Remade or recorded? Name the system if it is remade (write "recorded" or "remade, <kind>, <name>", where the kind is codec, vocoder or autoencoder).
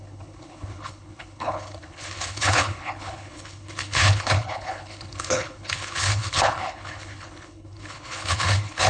remade, codec, HILCodec